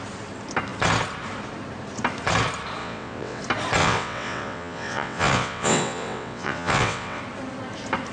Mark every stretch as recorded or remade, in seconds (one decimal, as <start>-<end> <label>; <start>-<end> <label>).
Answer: 0.0-2.8 recorded; 2.8-3.4 remade; 3.4-3.8 recorded; 3.8-7.2 remade; 7.2-8.1 recorded